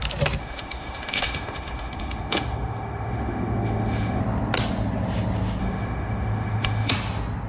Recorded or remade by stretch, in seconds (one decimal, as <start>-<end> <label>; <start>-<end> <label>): 0.0-0.4 recorded; 0.4-4.2 remade; 4.2-5.6 recorded; 5.6-6.9 remade; 6.9-7.5 recorded